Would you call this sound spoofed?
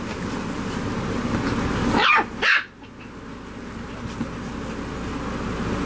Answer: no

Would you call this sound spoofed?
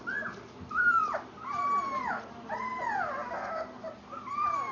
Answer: no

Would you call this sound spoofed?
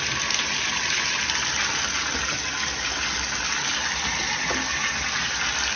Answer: no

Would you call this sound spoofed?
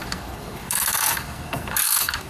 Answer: yes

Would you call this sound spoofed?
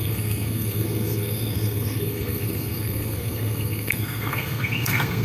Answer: yes